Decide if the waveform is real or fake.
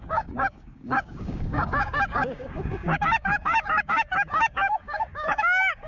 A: fake